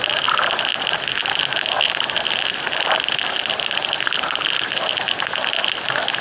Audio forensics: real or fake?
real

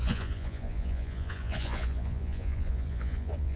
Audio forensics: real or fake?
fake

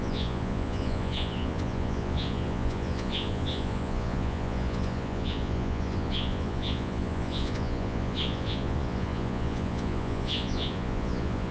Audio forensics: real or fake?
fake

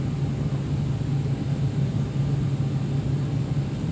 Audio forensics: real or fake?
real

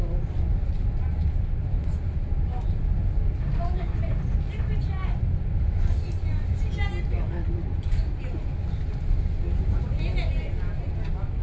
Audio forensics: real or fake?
real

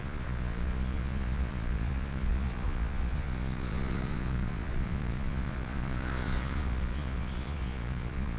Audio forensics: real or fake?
fake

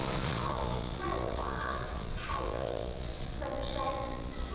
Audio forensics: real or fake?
fake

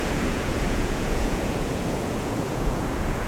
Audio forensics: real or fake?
fake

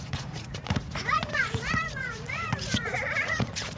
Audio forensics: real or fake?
fake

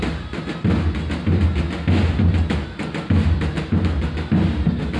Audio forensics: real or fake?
real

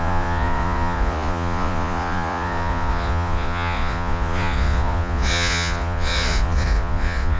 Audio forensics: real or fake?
fake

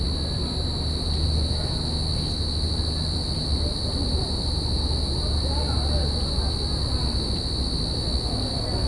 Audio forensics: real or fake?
real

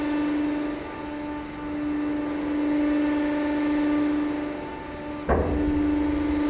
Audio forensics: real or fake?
real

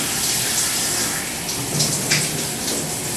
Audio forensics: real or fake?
real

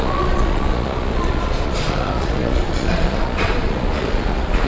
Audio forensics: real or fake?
fake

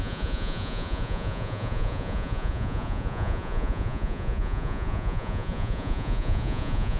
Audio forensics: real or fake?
fake